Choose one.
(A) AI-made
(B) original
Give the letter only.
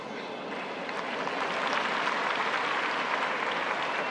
B